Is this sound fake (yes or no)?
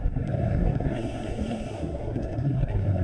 yes